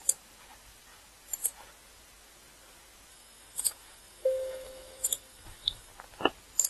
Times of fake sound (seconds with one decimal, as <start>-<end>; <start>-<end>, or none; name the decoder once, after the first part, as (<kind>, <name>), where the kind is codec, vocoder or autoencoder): 3.1-5.9 (autoencoder, DAC-VAE)